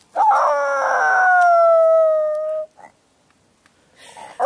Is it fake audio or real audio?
real